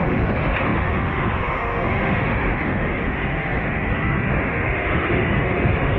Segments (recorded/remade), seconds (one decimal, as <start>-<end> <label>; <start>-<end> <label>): 0.0-6.0 remade